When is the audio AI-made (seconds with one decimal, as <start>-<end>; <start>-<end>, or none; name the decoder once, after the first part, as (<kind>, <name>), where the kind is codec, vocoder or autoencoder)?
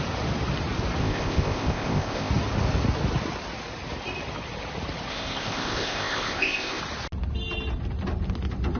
1.0-2.3 (codec, ZipCodec); 5.1-6.8